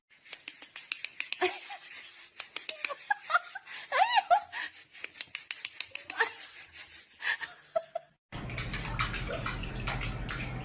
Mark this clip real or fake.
real